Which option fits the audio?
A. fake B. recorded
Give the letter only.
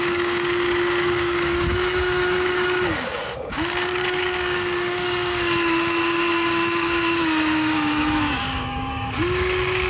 A